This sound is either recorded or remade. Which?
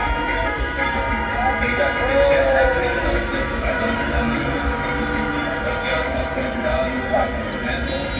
recorded